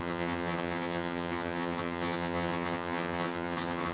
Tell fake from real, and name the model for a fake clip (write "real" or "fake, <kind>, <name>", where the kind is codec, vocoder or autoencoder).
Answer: fake, vocoder, HiFi-GAN